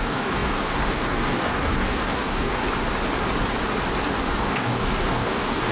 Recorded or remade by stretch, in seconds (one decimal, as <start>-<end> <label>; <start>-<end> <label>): 0.0-2.6 remade; 2.6-4.3 recorded; 4.3-5.7 remade